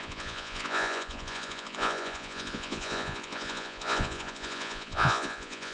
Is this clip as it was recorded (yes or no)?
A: no